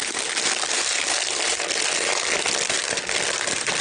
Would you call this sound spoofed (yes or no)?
no